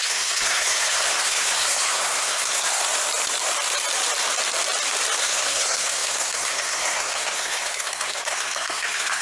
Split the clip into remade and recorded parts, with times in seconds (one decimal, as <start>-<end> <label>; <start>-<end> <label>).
0.0-2.8 remade; 2.8-5.2 recorded; 5.2-9.2 remade